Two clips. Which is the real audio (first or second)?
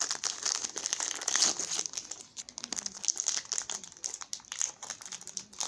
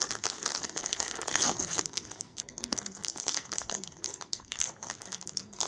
first